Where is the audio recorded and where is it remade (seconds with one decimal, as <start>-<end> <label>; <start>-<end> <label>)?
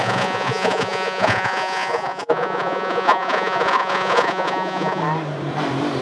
0.0-5.0 remade; 5.0-6.0 recorded